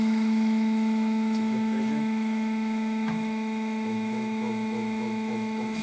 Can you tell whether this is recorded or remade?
remade